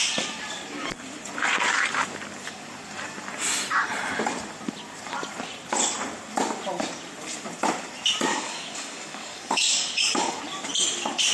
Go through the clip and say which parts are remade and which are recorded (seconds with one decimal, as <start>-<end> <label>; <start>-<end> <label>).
0.0-8.3 recorded; 8.3-10.4 remade; 10.4-11.3 recorded